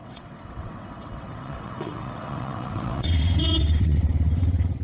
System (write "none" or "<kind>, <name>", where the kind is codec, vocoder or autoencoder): vocoder, WaveNeXt